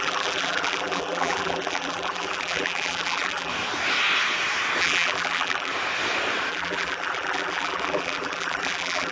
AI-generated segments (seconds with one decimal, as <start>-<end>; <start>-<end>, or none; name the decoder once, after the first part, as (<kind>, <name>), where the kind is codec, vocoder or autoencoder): 0.0-3.5 (vocoder, BigVGAN v2); 4.8-5.7; 6.5-9.1